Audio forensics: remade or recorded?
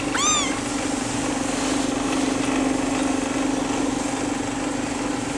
recorded